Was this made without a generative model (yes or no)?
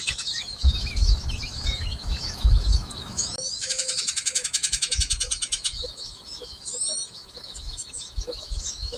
no